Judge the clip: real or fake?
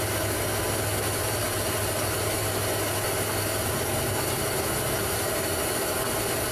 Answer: real